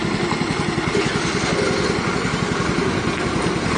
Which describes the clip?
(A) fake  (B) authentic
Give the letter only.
B